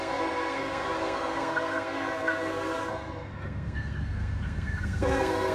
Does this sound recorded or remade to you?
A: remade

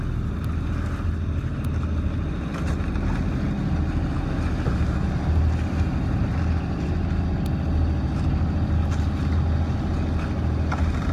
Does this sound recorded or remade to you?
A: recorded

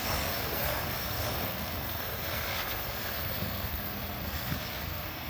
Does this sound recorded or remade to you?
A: remade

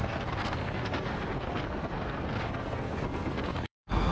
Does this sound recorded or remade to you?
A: remade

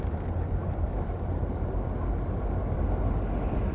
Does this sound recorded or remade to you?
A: recorded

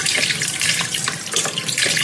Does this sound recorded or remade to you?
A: recorded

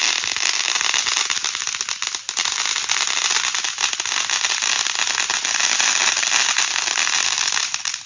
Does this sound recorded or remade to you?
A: recorded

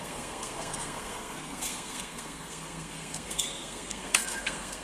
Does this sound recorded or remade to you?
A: remade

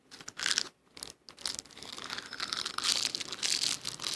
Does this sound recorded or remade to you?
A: recorded